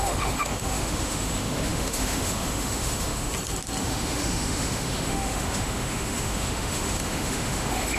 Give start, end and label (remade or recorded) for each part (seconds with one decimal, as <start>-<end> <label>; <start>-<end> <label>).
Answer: 0.0-3.3 remade; 3.3-3.8 recorded; 3.8-8.0 remade